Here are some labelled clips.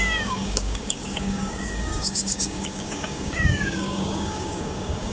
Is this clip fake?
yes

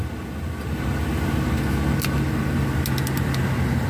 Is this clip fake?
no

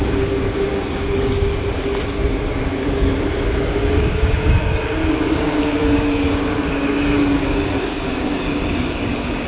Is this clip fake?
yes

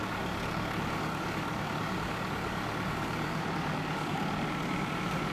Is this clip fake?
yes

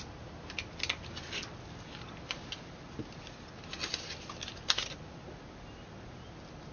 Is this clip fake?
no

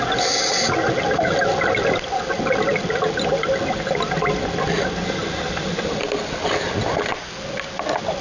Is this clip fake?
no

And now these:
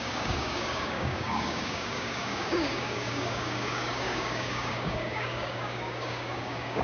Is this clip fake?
yes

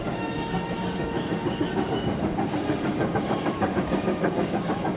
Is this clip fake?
yes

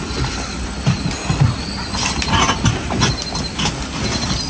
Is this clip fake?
no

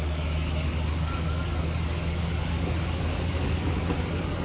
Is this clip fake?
yes